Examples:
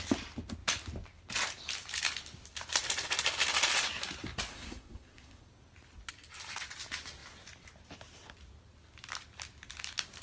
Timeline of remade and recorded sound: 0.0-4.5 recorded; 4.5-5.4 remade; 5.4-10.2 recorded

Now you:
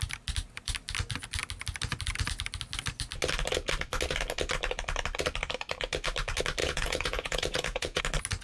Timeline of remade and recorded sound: 0.0-6.6 recorded; 6.6-8.0 remade; 8.0-8.4 recorded

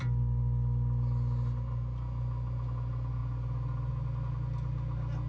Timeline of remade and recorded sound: 0.0-5.3 recorded